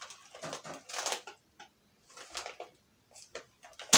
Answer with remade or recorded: recorded